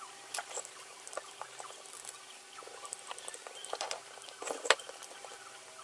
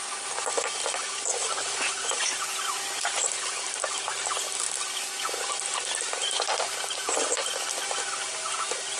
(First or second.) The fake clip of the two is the first